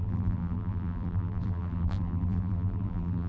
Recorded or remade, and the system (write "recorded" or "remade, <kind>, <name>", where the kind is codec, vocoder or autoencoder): remade, vocoder, BigVGAN v2